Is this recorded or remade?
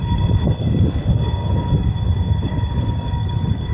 remade